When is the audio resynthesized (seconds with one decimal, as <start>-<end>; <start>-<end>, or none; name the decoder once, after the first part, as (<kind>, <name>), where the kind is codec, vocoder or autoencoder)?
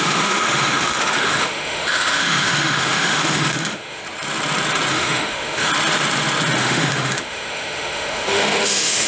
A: 0.0-4.0 (autoencoder, DAC-VAE); 4.9-5.7; 6.6-9.1